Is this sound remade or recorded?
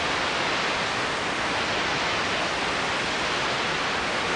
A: recorded